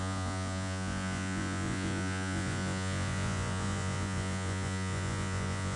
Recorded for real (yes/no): no